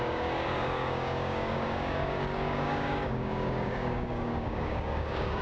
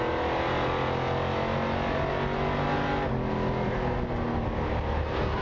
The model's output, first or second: first